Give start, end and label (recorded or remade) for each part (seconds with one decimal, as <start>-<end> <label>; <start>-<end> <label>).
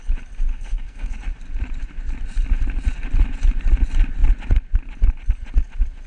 0.0-0.5 recorded; 0.5-1.2 remade; 1.2-6.1 recorded